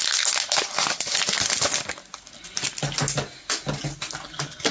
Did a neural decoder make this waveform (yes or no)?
no